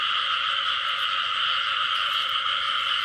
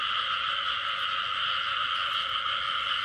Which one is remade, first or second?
first